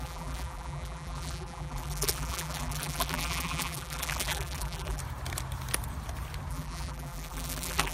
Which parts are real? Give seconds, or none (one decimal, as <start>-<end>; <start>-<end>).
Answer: 5.0-6.5